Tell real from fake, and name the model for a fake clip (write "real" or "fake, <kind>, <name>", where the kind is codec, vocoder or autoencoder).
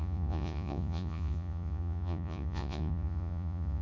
fake, vocoder, Vocos